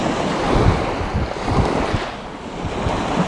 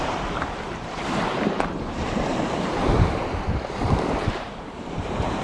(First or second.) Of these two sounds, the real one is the first